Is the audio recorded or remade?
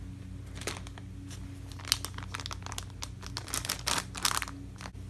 recorded